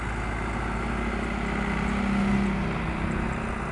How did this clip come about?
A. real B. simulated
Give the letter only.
A